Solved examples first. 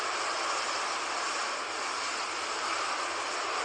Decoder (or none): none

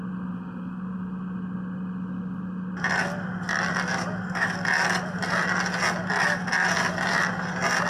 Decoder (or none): none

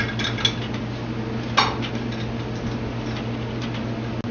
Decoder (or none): none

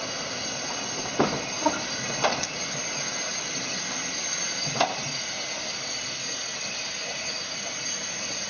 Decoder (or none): none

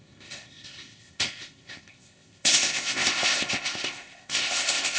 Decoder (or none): codec, ZipCodec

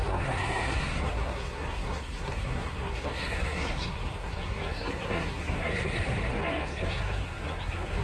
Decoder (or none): codec, SNAC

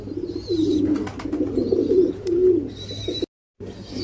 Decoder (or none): none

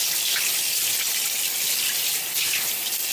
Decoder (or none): none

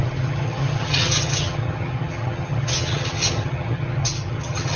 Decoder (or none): vocoder, HiFi-GAN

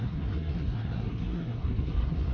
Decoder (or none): codec, SNAC